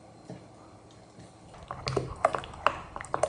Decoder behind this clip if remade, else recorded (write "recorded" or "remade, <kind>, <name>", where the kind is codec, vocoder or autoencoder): recorded